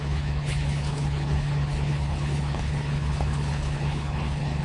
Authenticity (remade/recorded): remade